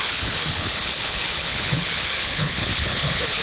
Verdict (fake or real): fake